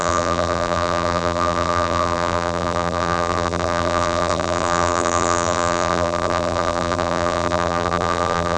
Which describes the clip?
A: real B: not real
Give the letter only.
B